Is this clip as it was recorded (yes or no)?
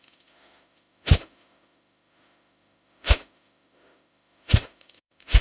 no